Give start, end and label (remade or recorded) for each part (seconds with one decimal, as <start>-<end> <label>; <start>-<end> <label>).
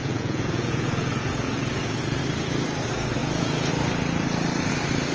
0.0-2.2 remade; 2.2-3.2 recorded; 3.2-3.7 remade; 3.7-5.1 recorded